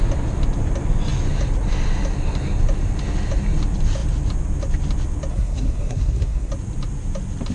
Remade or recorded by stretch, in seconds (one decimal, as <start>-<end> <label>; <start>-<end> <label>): 0.0-5.3 recorded; 5.3-6.5 remade; 6.5-7.5 recorded